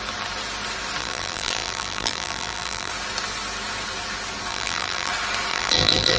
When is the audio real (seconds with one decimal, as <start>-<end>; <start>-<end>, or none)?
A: 0.0-1.0; 2.9-4.5; 5.1-5.5